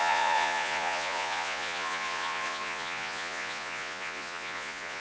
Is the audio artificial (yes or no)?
yes